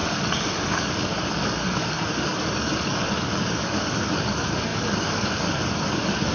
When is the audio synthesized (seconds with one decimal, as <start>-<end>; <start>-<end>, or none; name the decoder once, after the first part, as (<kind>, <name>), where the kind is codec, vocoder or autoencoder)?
0.0-6.3 (codec, DAC)